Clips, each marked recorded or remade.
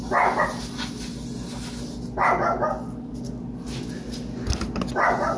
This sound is recorded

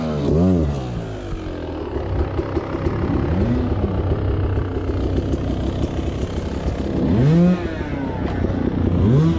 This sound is recorded